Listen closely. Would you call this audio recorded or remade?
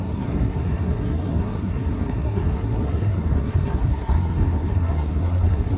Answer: remade